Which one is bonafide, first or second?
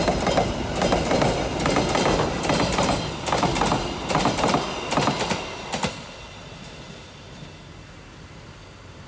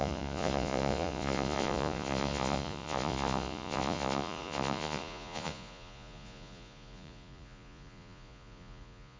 first